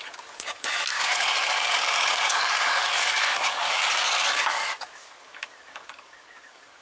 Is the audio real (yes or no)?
no